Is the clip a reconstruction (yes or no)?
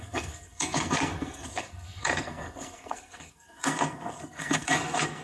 yes